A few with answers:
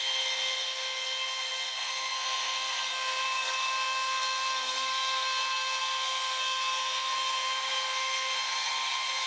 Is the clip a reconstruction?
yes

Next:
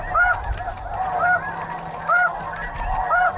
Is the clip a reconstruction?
no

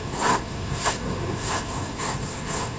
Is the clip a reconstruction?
yes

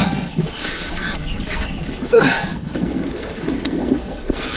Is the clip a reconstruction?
yes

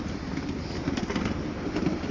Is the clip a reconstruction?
no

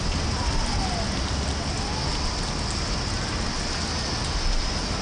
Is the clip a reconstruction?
no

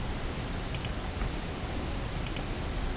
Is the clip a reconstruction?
no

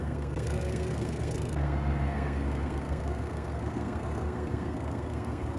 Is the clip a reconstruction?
yes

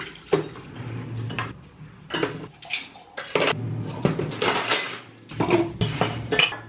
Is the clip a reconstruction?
no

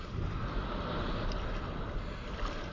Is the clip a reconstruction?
no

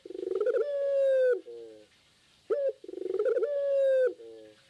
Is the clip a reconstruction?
no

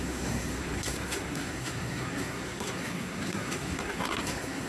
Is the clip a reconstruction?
yes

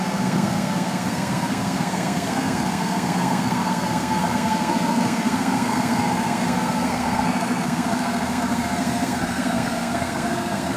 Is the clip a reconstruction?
yes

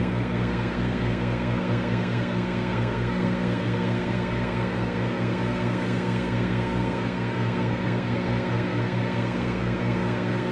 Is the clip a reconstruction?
yes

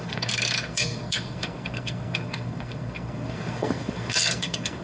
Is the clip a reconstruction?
yes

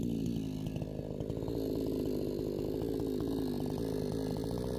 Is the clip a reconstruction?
no